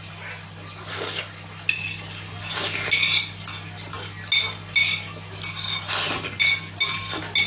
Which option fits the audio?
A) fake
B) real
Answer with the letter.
B